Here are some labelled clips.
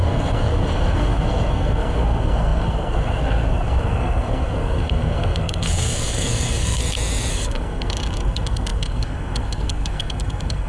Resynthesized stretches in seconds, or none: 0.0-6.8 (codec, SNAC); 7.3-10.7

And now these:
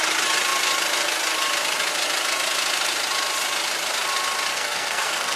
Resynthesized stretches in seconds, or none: 4.5-5.4 (codec, SNAC)

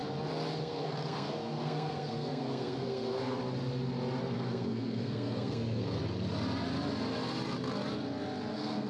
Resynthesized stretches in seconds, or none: 0.6-3.4 (codec, SNAC); 4.2-6.0; 8.5-8.9

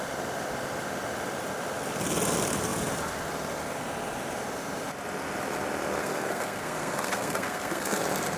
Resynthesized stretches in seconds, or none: 6.0-8.0 (codec, SNAC)

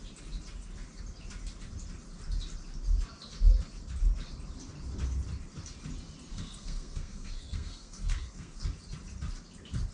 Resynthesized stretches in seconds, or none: 6.3-8.6 (codec, SNAC)

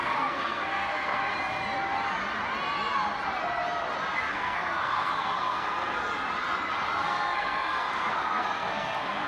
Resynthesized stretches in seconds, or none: 0.0-1.3 (codec, SNAC); 4.3-6.0; 7.0-9.3